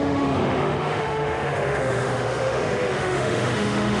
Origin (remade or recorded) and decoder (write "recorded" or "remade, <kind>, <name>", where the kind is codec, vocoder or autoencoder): remade, autoencoder, DAC-VAE